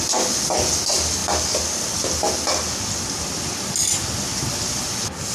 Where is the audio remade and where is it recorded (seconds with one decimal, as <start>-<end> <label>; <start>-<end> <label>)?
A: 0.0-5.3 recorded